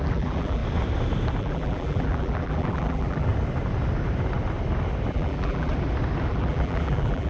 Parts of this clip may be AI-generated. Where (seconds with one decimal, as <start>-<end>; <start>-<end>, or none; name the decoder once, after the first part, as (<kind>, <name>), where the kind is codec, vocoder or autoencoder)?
0.0-0.6 (vocoder, BigVGAN v2); 1.4-3.3; 5.1-5.7; 6.3-7.3